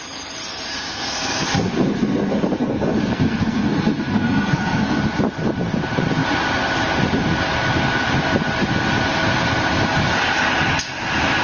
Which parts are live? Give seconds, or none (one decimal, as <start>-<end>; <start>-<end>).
0.0-0.7; 5.0-11.4